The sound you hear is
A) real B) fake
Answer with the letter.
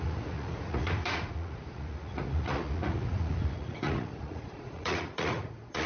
B